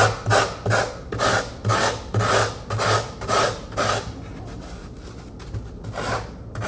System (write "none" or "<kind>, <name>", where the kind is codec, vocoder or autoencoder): none